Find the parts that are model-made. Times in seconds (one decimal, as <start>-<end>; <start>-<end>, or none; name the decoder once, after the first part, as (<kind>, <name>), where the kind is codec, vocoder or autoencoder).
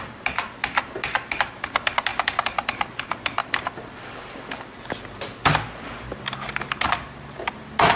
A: 2.1-2.9 (vocoder, BigVGAN v2); 3.4-5.1